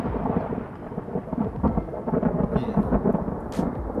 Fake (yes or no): no